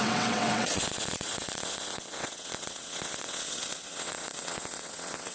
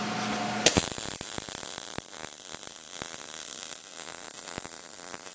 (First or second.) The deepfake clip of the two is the first